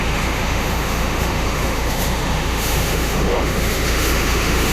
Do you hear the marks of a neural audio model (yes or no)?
yes